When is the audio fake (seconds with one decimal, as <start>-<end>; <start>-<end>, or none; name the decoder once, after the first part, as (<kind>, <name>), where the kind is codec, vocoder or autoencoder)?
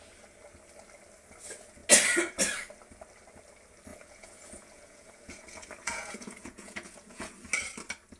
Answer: 3.9-7.3 (vocoder, Vocos)